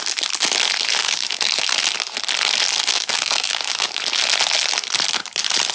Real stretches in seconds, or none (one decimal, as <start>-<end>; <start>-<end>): 0.0-1.0; 1.5-2.9; 4.0-5.7